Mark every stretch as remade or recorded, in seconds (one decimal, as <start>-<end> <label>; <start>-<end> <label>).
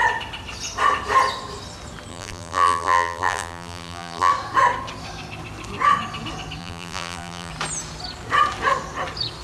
0.0-2.1 recorded; 2.1-4.3 remade; 4.3-6.6 recorded; 6.6-7.5 remade; 7.5-9.4 recorded